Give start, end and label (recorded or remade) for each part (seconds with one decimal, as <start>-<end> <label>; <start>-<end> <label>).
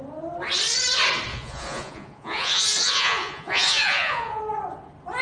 0.0-1.3 recorded; 1.3-4.4 remade; 4.4-5.2 recorded